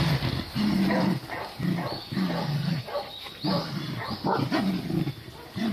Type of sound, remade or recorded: recorded